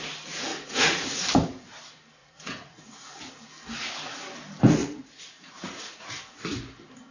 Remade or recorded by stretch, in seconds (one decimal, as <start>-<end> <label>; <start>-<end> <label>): 0.0-0.5 recorded; 0.5-1.2 remade; 1.2-2.2 recorded; 2.2-3.3 remade; 3.3-4.8 recorded; 4.8-6.2 remade; 6.2-7.1 recorded